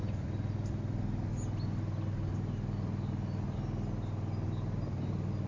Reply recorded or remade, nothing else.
recorded